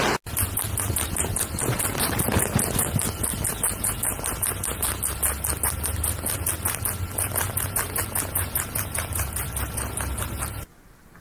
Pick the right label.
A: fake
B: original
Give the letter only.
B